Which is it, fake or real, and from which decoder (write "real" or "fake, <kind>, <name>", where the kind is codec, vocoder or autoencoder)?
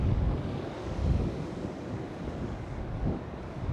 fake, codec, DAC